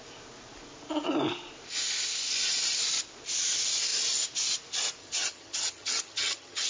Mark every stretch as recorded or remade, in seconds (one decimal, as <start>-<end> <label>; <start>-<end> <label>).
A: 0.0-5.0 recorded; 5.0-6.7 remade

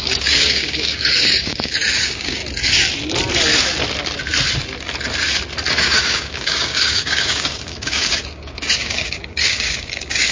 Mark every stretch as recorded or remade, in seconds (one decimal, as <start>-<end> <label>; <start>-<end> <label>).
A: 0.0-2.4 remade; 2.4-5.7 recorded; 5.7-10.3 remade

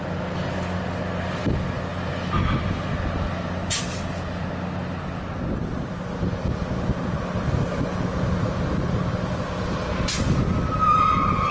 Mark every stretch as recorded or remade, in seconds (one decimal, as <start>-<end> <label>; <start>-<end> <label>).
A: 0.0-11.5 recorded

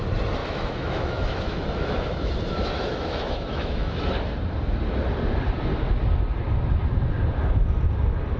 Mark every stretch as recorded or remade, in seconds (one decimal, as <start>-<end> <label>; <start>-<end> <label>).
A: 0.0-0.4 recorded; 0.4-4.0 remade; 4.0-8.4 recorded

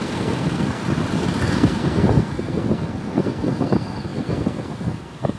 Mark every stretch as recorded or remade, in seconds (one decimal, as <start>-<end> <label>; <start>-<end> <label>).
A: 0.0-0.8 remade; 0.8-1.4 recorded; 1.4-5.4 remade

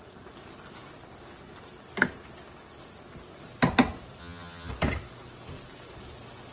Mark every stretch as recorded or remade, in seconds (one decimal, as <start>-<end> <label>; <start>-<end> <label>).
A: 0.0-4.2 recorded; 4.2-4.7 remade; 4.7-6.5 recorded